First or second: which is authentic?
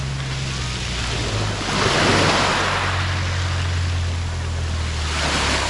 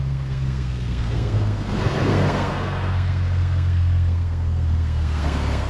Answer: first